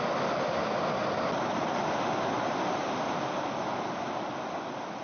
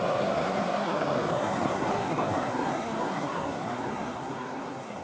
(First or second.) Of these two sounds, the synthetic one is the second